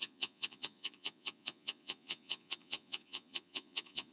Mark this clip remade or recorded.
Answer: remade